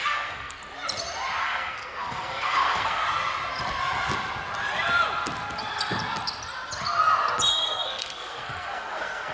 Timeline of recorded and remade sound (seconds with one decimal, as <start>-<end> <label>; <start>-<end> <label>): 0.0-0.6 remade; 0.6-1.4 recorded; 1.4-3.0 remade; 3.0-7.5 recorded; 7.5-9.3 remade